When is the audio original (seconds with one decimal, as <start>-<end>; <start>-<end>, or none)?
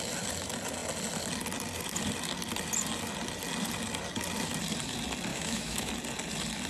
0.0-5.3; 5.9-6.7